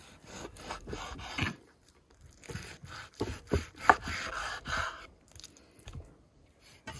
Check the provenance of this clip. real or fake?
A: real